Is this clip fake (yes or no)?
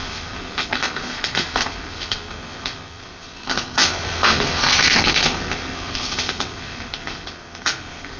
yes